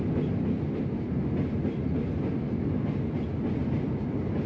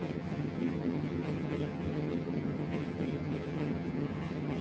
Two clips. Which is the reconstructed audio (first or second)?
second